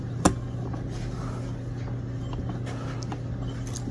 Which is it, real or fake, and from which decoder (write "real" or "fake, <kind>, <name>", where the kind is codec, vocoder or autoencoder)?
real